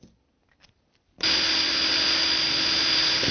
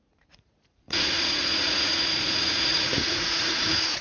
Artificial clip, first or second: second